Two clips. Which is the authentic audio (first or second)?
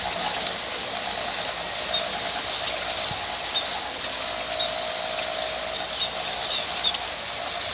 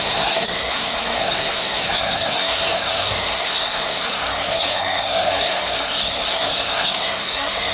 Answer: first